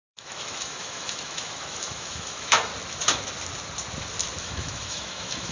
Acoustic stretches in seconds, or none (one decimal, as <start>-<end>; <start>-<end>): 2.7-4.4